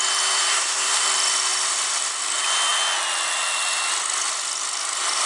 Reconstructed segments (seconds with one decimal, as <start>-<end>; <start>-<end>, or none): 0.5-1.0